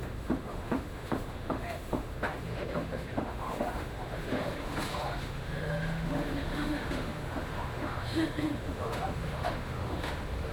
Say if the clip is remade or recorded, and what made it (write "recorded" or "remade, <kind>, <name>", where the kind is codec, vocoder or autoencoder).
remade, autoencoder, DAC-VAE